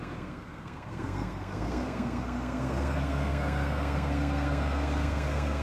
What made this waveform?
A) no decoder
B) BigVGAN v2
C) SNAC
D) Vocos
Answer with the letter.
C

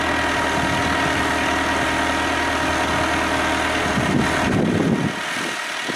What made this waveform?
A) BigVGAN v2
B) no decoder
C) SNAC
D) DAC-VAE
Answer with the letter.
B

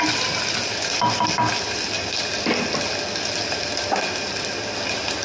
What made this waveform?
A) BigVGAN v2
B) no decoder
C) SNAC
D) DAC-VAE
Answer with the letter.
B